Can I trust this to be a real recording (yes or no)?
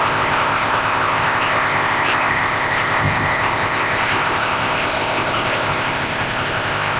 no